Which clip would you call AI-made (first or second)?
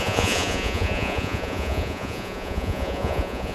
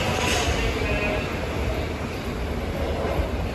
first